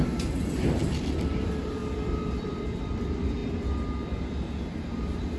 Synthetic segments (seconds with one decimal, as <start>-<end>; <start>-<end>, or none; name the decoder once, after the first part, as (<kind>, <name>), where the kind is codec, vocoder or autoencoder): 0.0-0.8 (vocoder, BigVGAN v2); 1.4-1.8; 2.4-3.4; 4.7-5.4